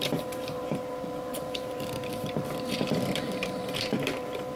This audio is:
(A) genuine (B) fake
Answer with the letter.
B